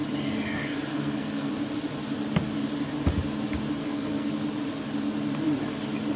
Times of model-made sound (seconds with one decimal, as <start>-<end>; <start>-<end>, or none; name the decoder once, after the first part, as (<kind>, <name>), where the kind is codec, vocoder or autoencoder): 0.9-1.5 (codec, SNAC); 3.8-4.3

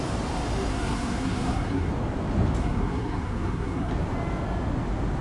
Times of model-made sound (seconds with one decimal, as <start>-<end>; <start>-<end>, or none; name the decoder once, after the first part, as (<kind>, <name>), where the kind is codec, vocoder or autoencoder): 0.7-1.9 (codec, SNAC); 2.6-3.9